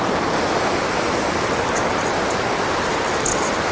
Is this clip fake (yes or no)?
no